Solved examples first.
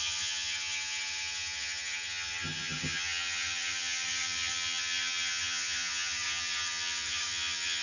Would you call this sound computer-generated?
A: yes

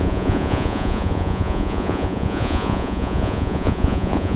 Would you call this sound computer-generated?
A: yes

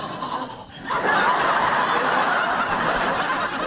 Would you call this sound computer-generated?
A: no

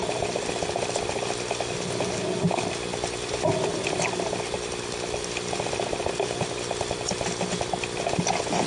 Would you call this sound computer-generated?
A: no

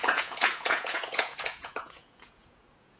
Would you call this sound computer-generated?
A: yes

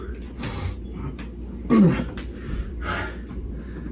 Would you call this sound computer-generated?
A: no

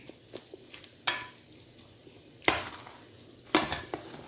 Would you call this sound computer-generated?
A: no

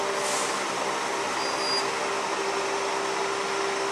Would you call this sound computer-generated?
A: no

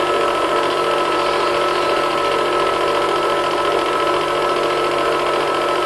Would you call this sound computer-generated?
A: no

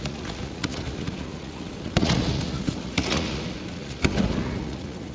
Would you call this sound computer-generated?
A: yes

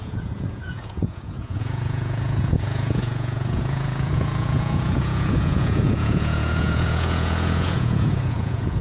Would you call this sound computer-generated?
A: yes